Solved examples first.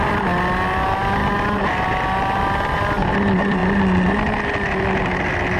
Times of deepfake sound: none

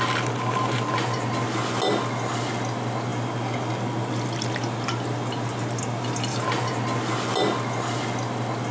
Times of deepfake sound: none

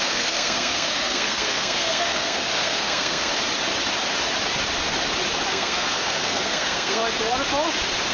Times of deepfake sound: 0.0-3.3 (codec, SNAC); 5.5-7.0

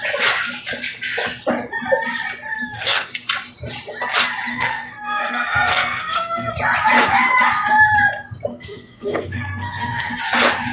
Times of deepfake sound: 2.5-3.1 (codec, SNAC); 4.5-6.5; 8.5-10.2

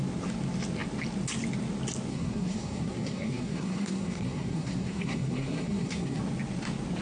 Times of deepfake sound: 2.1-6.2 (codec, SNAC)

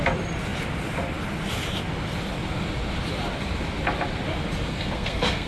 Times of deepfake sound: 4.7-5.5 (codec, SNAC)

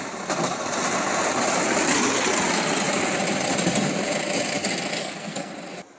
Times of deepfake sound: 5.0-5.5 (codec, SNAC)